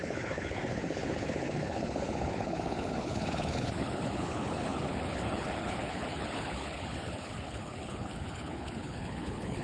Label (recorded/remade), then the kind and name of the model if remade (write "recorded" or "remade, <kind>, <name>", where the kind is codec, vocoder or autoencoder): remade, codec, HILCodec